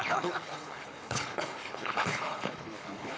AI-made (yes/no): yes